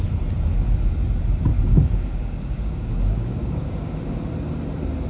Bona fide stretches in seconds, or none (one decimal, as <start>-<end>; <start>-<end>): 0.0-1.5; 4.0-5.1